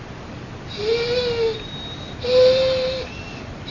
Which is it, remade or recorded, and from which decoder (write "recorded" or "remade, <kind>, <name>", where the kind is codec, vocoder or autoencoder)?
recorded